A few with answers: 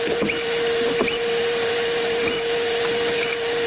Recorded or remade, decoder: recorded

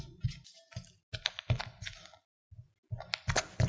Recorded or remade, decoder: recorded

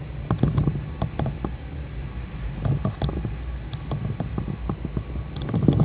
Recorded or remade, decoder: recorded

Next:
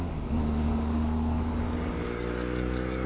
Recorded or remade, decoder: remade, codec, DAC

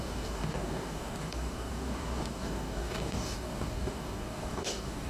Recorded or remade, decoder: remade, codec, DAC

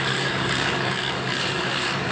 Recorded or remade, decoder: remade, codec, DAC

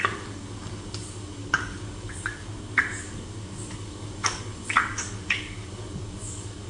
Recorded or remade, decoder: remade, codec, DAC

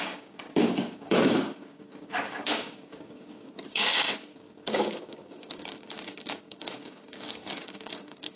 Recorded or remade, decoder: remade, codec, DAC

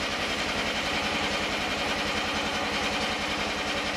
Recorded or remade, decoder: recorded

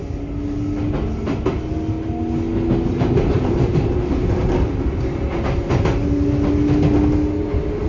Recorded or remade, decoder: recorded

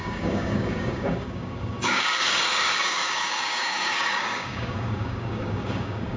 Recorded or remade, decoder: remade, codec, DAC